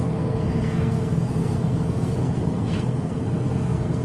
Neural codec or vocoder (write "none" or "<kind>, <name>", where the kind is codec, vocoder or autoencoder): codec, SNAC